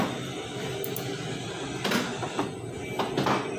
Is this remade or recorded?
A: recorded